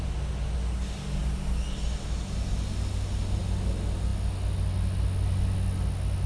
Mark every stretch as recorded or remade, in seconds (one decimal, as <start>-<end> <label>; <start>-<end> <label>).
0.0-6.3 recorded